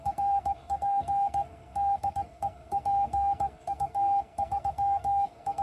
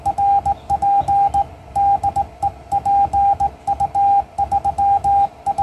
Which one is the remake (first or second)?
first